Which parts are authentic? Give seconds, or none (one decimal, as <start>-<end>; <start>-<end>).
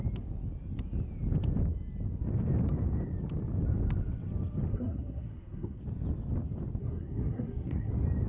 0.0-4.7; 5.8-6.8; 7.9-8.3